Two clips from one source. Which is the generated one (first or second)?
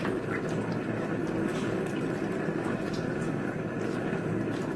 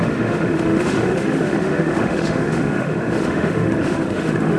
second